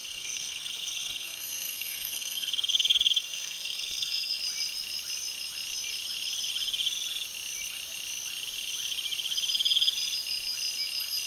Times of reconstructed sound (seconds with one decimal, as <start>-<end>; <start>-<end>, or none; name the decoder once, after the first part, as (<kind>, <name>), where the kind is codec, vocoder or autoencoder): 0.0-4.4 (codec, SNAC)